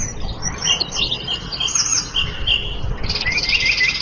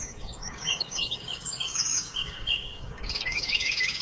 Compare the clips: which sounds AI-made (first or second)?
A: second